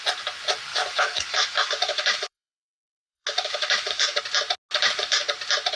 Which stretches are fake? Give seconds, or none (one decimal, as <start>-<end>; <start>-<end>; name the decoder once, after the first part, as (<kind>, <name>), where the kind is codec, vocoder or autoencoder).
0.7-4.2 (autoencoder, DAC-VAE)

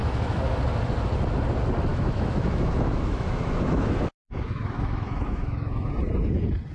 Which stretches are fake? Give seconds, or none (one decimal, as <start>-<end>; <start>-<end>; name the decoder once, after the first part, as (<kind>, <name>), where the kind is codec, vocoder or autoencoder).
0.0-0.6 (autoencoder, DAC-VAE); 1.9-5.9

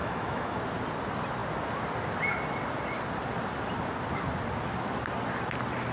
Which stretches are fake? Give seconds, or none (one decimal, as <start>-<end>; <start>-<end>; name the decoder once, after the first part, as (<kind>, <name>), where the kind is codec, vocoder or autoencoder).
0.0-0.6 (autoencoder, DAC-VAE)

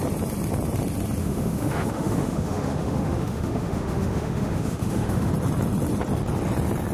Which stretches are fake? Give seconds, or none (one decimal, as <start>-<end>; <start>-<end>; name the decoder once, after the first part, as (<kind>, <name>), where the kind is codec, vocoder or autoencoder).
1.2-5.3 (autoencoder, DAC-VAE)